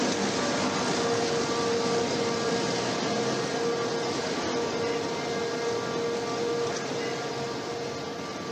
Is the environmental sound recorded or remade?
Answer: recorded